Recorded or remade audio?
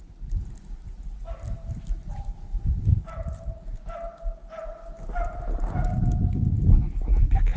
recorded